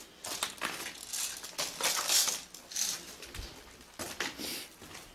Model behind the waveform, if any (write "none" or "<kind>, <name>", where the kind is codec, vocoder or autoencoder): none